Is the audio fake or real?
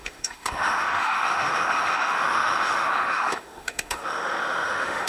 fake